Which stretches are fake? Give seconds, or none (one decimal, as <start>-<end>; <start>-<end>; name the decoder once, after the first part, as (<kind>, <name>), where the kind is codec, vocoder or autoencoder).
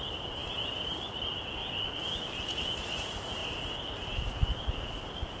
none